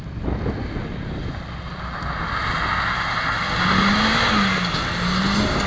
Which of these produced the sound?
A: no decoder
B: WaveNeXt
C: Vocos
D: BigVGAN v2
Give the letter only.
A